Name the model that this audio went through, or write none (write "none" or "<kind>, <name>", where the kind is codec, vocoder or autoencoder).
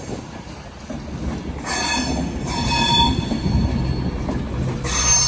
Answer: none